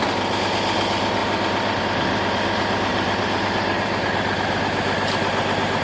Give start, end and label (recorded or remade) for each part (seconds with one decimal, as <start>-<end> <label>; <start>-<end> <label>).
0.0-1.2 recorded; 1.2-1.8 remade; 1.8-2.9 recorded; 2.9-4.1 remade; 4.1-5.8 recorded